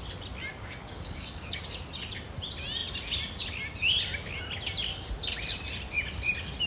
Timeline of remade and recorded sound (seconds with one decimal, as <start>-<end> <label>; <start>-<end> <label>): 0.0-0.5 recorded; 0.5-1.6 remade; 1.6-6.7 recorded